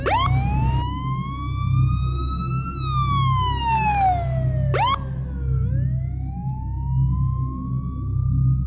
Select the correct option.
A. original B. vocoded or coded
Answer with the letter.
A